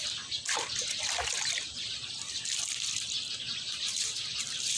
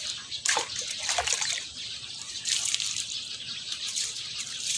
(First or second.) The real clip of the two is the first